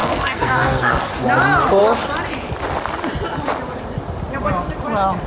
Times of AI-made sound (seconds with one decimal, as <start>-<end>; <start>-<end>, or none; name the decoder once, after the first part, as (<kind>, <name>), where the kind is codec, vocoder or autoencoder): 0.0-1.1 (codec, SNAC)